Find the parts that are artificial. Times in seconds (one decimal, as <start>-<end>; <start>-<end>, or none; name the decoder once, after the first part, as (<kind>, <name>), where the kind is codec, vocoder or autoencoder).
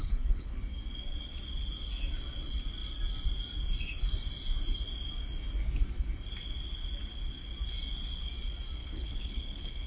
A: 0.0-0.6 (codec, HILCodec); 8.8-9.9